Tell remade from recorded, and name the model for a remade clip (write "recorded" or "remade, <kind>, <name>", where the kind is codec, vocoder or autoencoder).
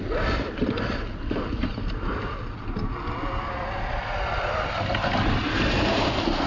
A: recorded